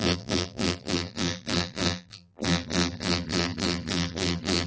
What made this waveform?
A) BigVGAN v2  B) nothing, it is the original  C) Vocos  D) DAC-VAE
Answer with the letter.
A